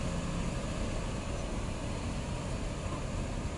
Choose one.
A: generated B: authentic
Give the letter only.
B